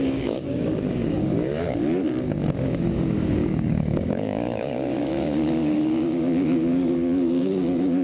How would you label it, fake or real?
fake